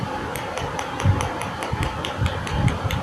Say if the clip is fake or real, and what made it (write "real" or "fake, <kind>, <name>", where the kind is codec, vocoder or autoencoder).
real